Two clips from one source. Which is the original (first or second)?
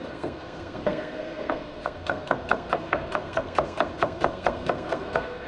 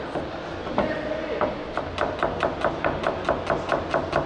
second